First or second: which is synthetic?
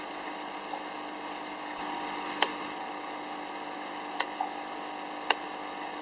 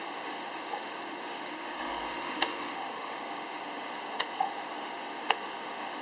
second